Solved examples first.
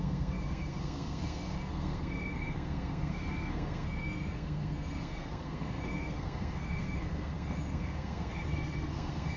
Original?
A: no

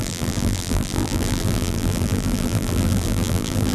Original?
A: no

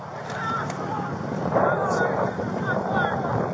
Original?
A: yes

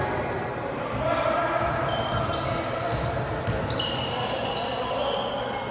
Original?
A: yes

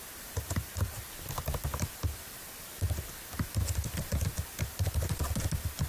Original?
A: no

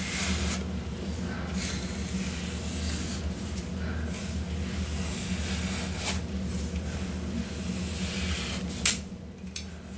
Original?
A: yes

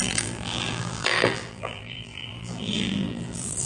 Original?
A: no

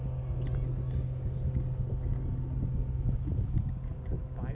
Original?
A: yes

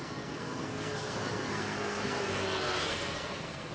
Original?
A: no